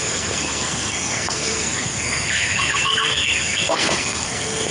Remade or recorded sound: remade